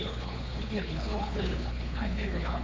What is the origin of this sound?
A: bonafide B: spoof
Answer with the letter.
B